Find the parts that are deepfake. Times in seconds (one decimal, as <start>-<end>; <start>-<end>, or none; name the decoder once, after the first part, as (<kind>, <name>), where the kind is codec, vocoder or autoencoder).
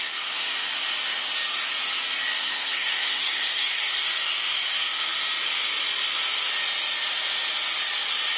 2.4-4.0 (codec, SNAC)